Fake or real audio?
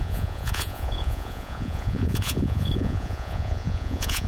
fake